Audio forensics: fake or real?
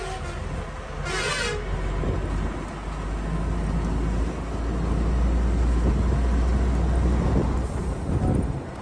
real